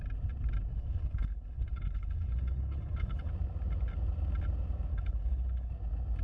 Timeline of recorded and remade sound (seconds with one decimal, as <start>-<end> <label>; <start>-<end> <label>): 0.0-0.7 recorded; 0.7-3.3 remade; 3.3-4.9 recorded; 4.9-5.7 remade; 5.7-6.2 recorded